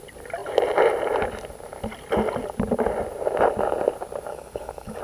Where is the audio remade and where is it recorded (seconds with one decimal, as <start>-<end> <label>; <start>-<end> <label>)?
0.0-4.3 recorded; 4.3-5.0 remade